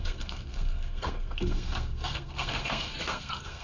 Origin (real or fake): fake